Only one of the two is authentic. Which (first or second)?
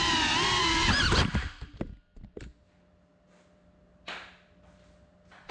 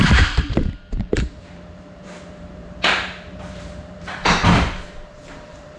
first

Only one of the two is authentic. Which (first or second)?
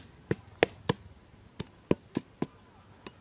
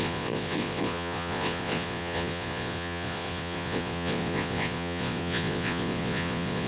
first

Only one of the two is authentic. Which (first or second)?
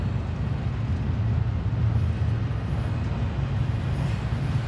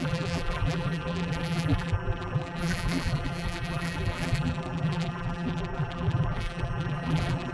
first